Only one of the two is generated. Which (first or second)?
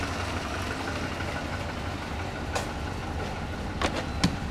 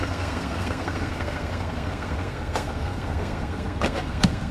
second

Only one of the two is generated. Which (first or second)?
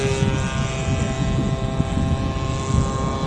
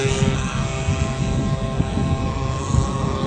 second